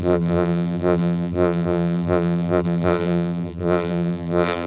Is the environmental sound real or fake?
fake